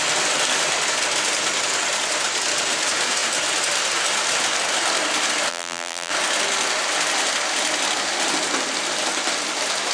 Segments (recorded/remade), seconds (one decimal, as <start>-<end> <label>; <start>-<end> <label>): 0.0-5.5 recorded; 5.5-6.1 remade; 6.1-9.9 recorded